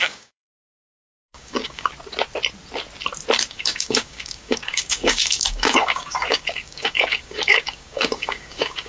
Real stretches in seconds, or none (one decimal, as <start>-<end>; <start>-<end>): 1.9-3.5